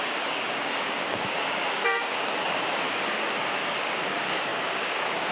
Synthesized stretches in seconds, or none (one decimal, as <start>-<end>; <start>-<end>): 0.0-5.3